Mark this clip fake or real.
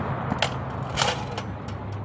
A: real